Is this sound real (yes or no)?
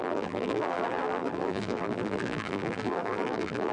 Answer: no